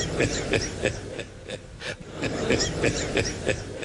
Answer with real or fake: real